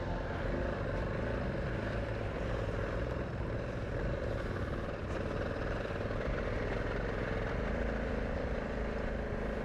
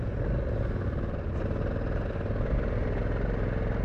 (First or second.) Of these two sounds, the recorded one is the second